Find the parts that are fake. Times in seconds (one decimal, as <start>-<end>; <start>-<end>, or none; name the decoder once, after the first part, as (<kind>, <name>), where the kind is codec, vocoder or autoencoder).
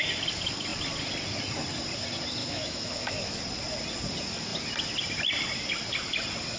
2.4-3.4 (autoencoder, DAC-VAE)